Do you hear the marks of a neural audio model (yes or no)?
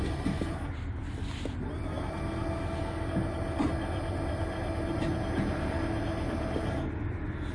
no